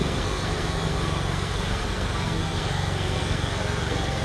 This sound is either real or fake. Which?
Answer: fake